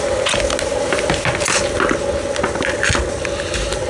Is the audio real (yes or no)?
yes